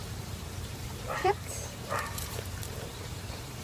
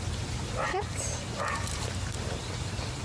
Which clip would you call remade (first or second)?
first